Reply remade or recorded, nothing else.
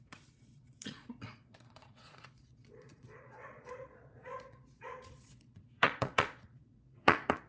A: remade